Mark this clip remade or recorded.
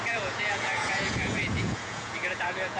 remade